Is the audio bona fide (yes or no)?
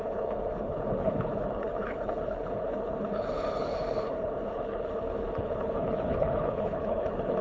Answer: no